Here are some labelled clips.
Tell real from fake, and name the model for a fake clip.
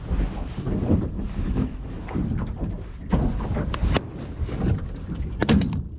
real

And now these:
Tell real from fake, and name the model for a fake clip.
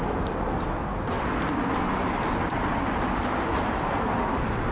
real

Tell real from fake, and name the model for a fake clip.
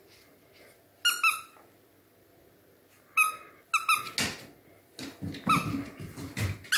real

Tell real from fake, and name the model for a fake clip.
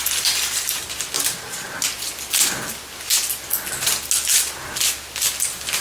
real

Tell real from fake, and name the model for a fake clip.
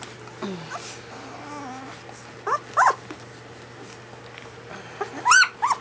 real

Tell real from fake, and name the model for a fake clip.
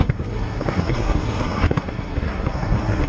fake, codec, SNAC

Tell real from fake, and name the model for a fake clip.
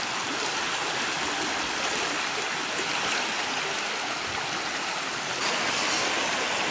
real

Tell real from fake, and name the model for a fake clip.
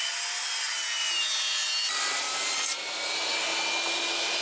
real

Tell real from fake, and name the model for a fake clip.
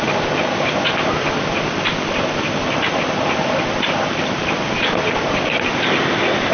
fake, vocoder, BigVGAN v2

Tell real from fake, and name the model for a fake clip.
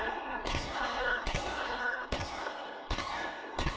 fake, codec, SNAC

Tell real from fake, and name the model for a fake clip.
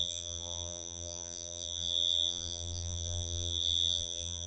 fake, vocoder, BigVGAN v2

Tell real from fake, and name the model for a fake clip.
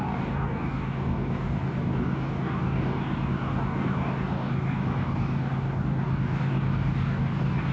fake, codec, DAC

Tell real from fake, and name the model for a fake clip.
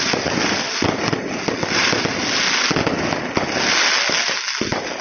real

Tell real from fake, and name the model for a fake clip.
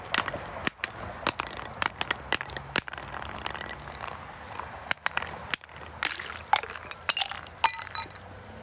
real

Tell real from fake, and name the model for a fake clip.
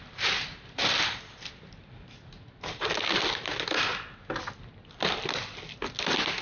real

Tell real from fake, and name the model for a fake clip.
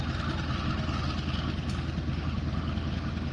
real